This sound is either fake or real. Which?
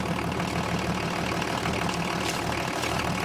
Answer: real